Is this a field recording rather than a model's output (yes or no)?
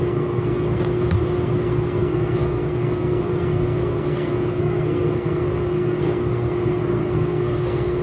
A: no